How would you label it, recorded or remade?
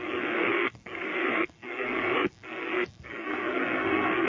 remade